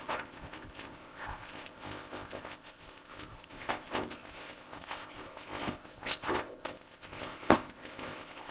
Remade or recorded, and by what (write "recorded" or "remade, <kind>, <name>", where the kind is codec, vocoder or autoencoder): remade, codec, ZipCodec